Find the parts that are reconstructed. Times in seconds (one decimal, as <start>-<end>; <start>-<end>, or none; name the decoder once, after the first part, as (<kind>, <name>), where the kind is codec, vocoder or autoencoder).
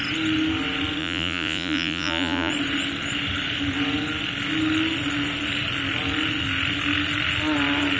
1.0-2.5 (vocoder, Vocos)